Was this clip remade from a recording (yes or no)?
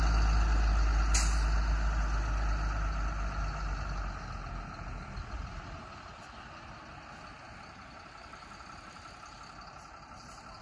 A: no